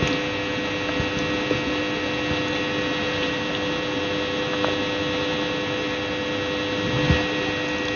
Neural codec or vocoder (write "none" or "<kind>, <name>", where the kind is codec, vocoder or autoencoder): none